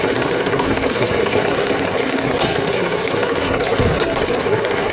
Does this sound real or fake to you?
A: fake